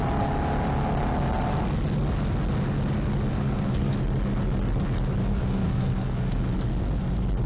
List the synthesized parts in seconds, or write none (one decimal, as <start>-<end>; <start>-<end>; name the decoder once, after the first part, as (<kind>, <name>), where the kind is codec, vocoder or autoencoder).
3.3-3.9 (codec, SNAC); 5.3-6.4